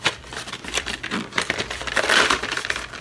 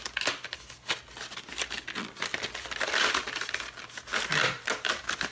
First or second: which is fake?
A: first